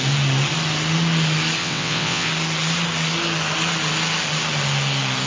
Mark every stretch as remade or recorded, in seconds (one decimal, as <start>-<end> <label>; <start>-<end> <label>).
0.0-1.6 recorded; 1.6-2.3 remade; 2.3-5.3 recorded